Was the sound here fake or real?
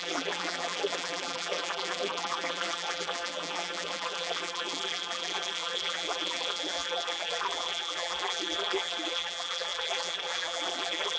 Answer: fake